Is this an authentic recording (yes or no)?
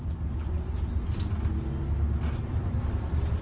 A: yes